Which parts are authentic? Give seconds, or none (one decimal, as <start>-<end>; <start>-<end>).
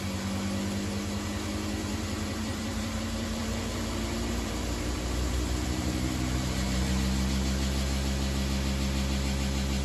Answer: 0.0-1.8; 6.9-9.8